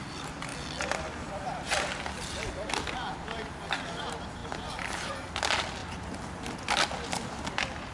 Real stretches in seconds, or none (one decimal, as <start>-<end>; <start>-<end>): 0.0-7.9

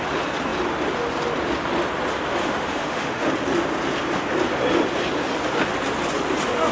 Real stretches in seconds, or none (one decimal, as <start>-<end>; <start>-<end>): 0.0-2.4; 3.3-6.7